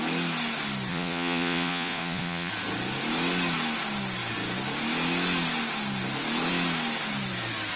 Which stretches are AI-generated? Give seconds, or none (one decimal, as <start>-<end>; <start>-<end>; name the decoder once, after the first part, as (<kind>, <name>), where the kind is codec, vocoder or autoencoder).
0.9-2.5 (vocoder, Vocos)